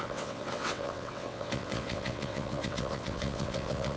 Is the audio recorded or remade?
remade